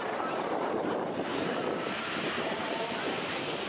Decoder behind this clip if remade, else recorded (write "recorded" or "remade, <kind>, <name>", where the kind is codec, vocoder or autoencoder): remade, vocoder, BigVGAN v2